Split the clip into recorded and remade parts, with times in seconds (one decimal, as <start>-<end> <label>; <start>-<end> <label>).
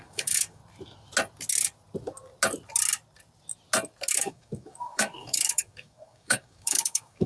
0.0-0.6 remade; 0.6-4.1 recorded; 4.1-7.3 remade